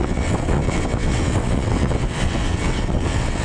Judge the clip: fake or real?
fake